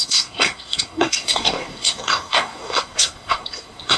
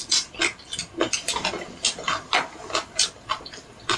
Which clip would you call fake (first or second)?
first